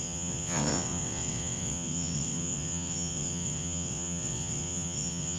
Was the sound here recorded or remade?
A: remade